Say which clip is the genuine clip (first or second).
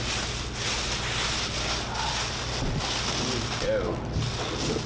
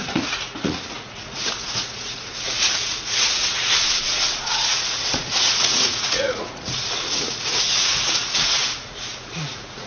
first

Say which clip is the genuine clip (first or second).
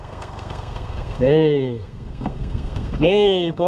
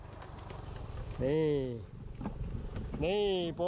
second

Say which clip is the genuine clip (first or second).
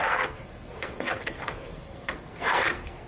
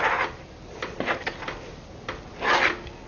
second